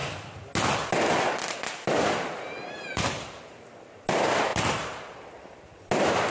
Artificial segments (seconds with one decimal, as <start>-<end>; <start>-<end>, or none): none

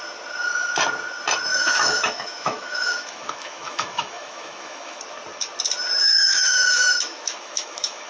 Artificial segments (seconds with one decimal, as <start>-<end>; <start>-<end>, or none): 1.5-5.0; 6.0-8.1